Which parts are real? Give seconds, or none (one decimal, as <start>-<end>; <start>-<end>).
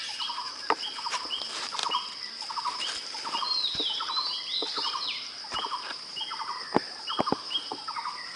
1.8-2.5; 7.7-8.4